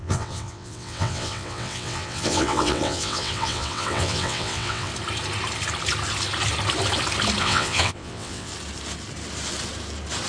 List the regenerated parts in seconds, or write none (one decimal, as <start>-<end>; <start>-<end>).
0.0-4.9; 7.4-8.5